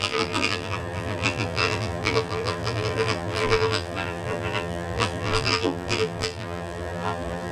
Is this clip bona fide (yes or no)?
no